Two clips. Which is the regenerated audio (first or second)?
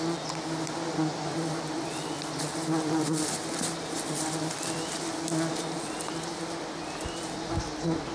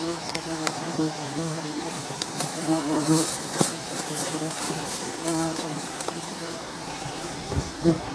second